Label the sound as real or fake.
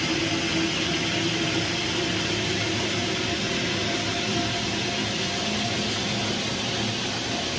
real